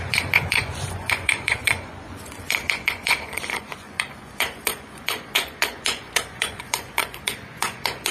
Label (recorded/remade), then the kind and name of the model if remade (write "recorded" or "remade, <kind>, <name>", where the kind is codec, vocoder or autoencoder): remade, vocoder, Vocos